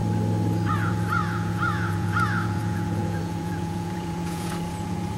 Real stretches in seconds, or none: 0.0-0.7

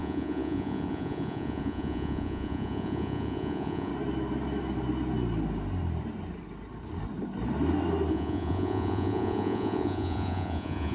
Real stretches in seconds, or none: 3.9-8.1